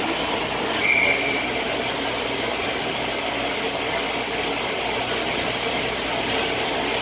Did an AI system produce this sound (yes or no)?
no